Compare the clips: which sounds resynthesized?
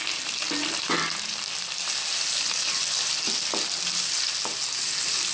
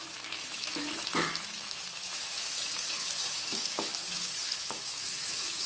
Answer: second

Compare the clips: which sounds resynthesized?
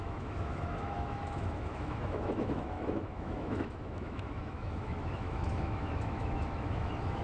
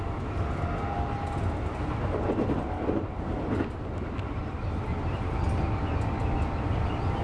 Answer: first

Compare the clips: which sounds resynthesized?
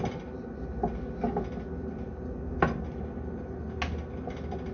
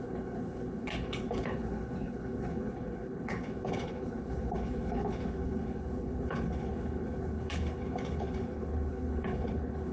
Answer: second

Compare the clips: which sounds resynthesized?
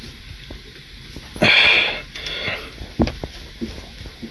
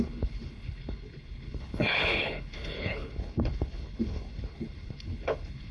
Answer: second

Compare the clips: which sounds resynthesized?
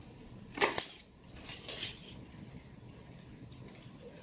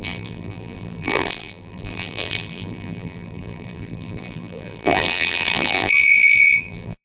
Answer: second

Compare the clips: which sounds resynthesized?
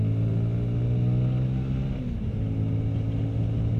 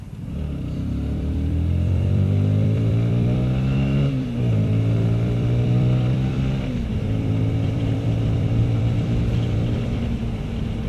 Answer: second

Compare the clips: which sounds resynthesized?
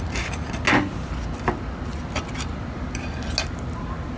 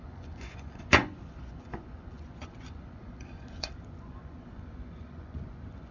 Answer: second